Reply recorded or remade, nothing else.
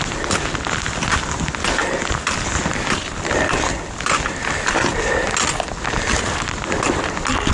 recorded